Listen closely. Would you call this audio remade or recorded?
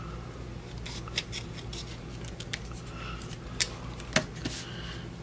recorded